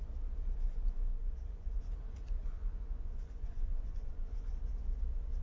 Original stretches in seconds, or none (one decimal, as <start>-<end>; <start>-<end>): 0.0-1.1; 1.8-2.4; 4.5-5.4